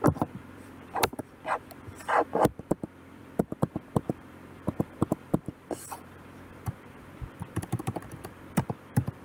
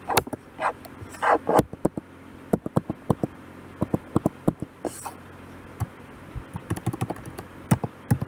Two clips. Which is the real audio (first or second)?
second